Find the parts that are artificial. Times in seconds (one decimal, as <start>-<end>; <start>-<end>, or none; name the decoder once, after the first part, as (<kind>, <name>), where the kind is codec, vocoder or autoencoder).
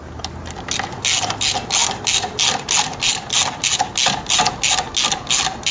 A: none